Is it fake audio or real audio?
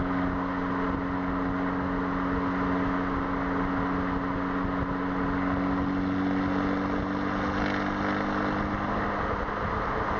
real